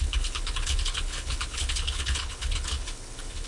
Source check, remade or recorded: remade